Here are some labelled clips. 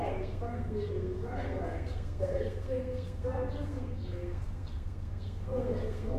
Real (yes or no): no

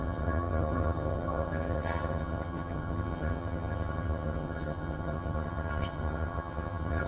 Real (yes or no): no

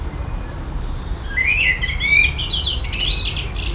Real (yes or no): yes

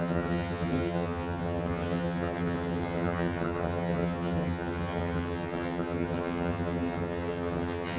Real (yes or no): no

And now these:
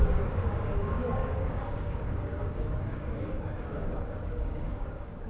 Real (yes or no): no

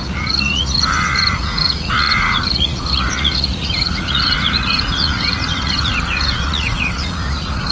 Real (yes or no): no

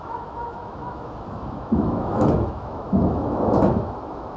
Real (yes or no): no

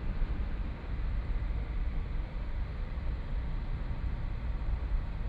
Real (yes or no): no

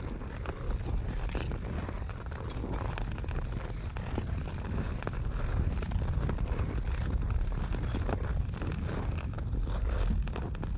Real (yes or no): yes